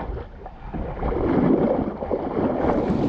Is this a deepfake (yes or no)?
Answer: no